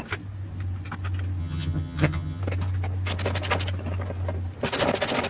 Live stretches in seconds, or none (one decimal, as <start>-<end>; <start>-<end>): 0.0-1.4; 2.4-5.3